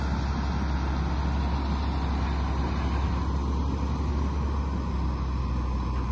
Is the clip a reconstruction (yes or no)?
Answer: no